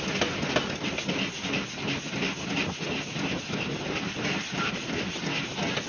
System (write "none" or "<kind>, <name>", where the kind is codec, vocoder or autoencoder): none